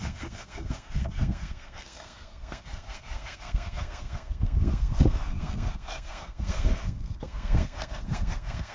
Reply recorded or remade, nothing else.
remade